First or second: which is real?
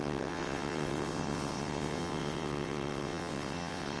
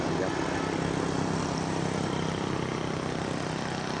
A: second